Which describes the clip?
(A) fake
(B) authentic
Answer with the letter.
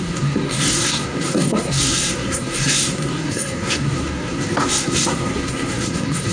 A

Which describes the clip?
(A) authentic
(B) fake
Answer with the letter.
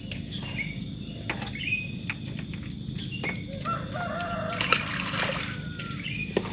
A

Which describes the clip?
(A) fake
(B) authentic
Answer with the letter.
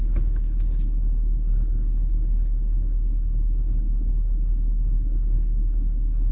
A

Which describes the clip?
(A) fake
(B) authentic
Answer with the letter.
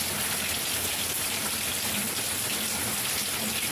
B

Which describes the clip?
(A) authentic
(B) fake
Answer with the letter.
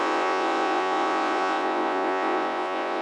B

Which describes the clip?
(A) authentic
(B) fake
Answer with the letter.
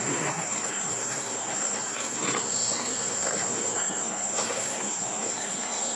B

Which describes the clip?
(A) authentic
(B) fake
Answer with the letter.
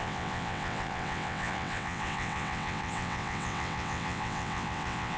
B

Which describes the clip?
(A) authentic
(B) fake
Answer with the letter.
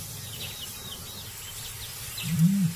A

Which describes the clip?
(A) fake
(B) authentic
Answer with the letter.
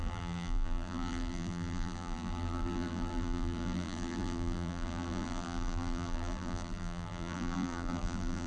A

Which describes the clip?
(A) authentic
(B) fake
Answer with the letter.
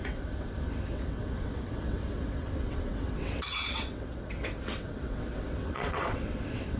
B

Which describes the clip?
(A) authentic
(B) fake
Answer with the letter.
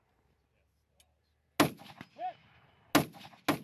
A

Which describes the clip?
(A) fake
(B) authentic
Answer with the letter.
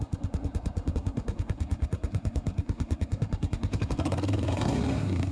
A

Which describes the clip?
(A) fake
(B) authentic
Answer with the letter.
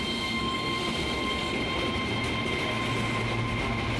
B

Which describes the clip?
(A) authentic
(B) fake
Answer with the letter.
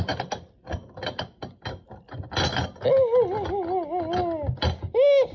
A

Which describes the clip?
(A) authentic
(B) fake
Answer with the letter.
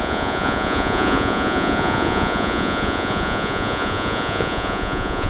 B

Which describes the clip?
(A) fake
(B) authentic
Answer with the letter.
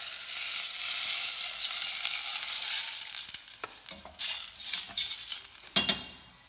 B